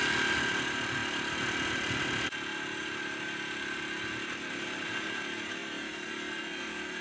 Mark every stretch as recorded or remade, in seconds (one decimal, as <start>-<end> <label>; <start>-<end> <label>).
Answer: 0.0-1.0 recorded; 1.0-1.9 remade; 1.9-5.6 recorded; 5.6-6.4 remade; 6.4-7.0 recorded